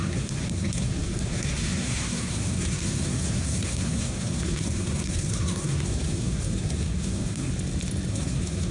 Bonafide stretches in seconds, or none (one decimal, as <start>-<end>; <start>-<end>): 7.5-8.1